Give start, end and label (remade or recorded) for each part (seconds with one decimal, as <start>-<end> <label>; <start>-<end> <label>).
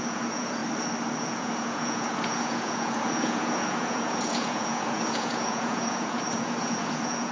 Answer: 0.0-0.6 remade; 0.6-1.2 recorded; 1.2-7.3 remade